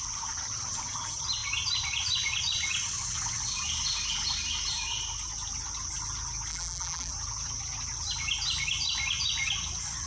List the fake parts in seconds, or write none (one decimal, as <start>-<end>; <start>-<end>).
6.5-7.1